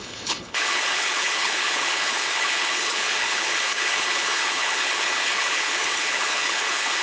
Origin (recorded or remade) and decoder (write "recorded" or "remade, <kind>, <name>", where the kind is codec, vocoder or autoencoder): remade, codec, HILCodec